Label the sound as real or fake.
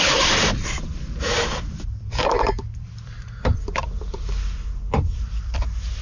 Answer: fake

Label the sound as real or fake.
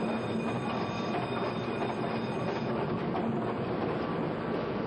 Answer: real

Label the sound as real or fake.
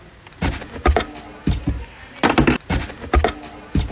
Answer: real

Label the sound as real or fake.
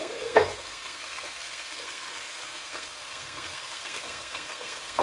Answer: fake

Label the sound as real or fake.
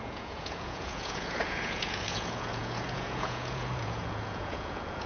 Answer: fake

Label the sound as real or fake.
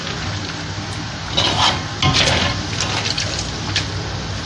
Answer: real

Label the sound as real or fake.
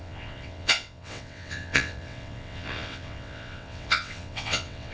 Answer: fake